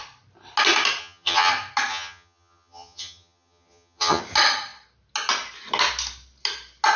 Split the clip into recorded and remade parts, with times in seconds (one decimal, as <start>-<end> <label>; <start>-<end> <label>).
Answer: 0.0-1.0 recorded; 1.0-1.5 remade; 1.5-1.9 recorded; 1.9-4.2 remade; 4.2-7.0 recorded